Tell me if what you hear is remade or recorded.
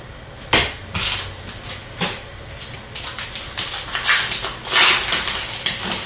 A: recorded